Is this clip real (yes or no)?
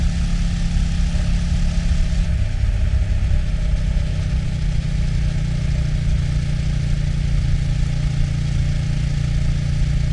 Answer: yes